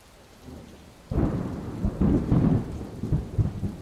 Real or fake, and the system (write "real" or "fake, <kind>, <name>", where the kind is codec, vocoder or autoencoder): fake, vocoder, BigVGAN v2